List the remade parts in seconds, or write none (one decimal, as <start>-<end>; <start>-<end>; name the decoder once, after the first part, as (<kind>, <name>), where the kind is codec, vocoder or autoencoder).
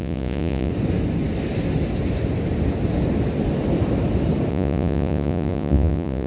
0.0-0.7 (vocoder, Vocos); 4.5-6.3